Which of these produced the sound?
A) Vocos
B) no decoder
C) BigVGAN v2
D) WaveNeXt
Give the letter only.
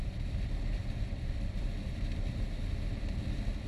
C